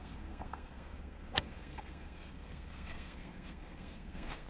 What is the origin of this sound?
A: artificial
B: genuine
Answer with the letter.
A